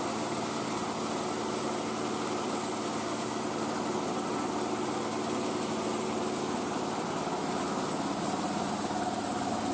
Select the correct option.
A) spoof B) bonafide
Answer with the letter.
B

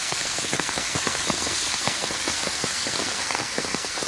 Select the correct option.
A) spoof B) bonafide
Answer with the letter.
A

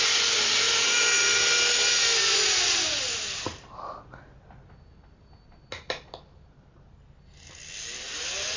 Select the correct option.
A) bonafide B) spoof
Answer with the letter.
A